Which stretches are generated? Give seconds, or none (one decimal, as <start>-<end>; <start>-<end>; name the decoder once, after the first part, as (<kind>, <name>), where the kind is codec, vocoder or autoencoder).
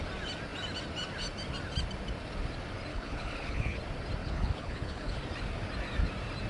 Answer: 2.9-3.8 (codec, HILCodec); 4.2-5.2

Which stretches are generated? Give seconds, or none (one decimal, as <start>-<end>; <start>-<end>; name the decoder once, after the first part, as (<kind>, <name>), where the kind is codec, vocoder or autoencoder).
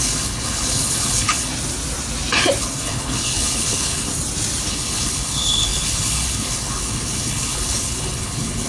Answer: 0.0-1.5 (codec, HILCodec); 2.6-4.1; 4.6-8.7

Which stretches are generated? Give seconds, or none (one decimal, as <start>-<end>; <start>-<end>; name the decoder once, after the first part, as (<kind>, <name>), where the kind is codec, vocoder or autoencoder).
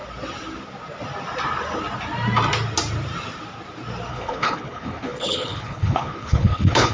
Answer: 4.1-6.9 (codec, HILCodec)